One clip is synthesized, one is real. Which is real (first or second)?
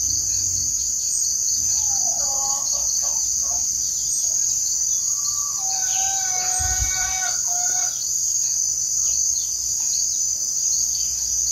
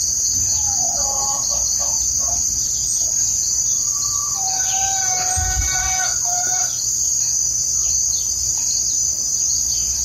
first